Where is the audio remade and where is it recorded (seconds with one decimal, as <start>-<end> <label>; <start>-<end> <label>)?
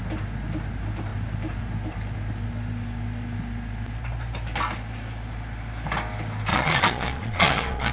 0.0-6.5 recorded; 6.5-7.9 remade